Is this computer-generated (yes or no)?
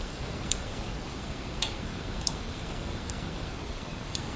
yes